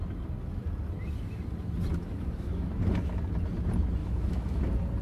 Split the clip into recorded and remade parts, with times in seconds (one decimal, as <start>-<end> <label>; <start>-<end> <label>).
0.0-1.9 recorded; 1.9-2.7 remade; 2.7-4.0 recorded; 4.0-4.6 remade; 4.6-5.0 recorded